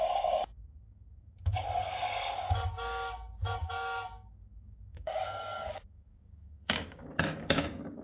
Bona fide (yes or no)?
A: no